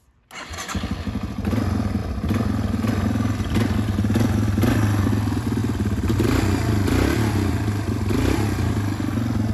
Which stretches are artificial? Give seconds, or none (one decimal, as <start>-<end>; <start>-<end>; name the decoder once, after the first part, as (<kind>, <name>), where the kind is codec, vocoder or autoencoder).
none